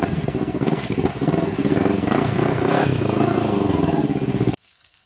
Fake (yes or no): yes